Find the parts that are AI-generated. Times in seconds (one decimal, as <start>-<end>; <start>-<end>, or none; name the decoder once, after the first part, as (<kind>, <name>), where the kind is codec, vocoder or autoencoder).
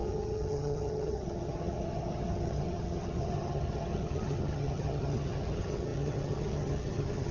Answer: 0.0-7.3 (vocoder, HiFi-GAN)